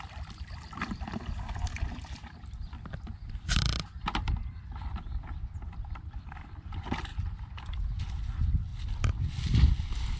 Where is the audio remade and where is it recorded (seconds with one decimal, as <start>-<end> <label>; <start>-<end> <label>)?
0.0-7.1 recorded; 7.1-8.0 remade; 8.0-10.2 recorded